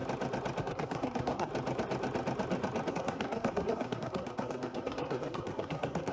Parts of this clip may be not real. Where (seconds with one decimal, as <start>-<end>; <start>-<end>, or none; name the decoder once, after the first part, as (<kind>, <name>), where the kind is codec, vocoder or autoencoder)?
0.6-1.5 (codec, SNAC); 2.9-6.1